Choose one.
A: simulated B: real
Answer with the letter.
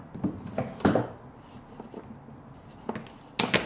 B